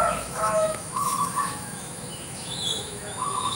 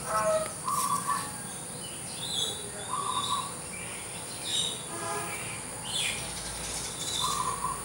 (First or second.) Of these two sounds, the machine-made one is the first